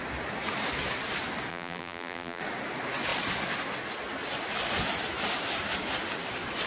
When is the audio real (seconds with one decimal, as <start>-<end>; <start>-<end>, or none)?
0.0-1.5; 2.4-6.7